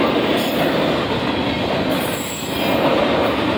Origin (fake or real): real